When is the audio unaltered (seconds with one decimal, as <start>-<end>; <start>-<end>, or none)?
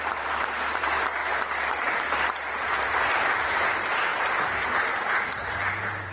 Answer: 4.1-4.8